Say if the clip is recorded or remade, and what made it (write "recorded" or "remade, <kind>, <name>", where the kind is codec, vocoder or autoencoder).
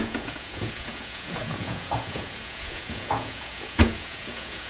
remade, vocoder, Vocos